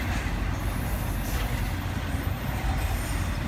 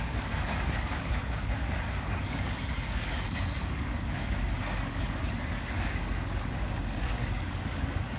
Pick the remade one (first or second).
second